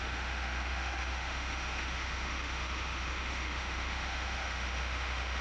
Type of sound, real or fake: fake